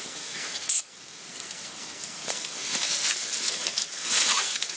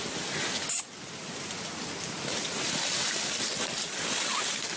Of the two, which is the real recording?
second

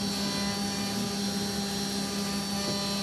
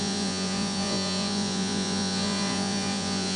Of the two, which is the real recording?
first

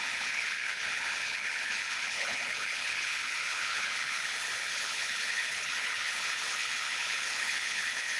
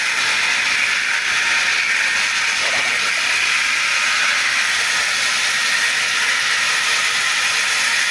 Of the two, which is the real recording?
second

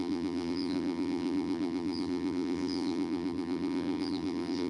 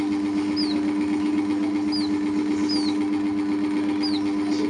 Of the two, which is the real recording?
second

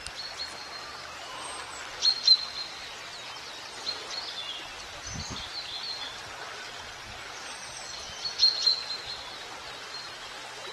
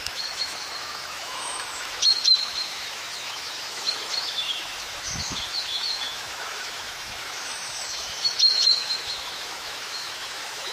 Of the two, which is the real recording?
first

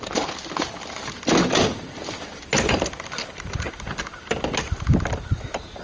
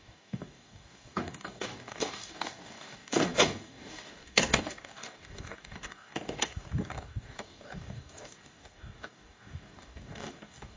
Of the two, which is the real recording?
first